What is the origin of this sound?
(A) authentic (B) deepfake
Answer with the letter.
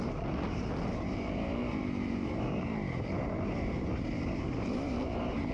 B